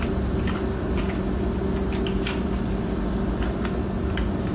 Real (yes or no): yes